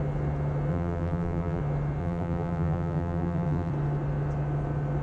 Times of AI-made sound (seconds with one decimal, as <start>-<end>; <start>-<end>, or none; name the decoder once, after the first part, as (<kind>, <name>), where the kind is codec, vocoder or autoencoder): 0.7-1.6 (vocoder, BigVGAN v2); 2.0-3.7